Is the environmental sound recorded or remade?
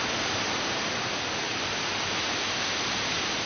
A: recorded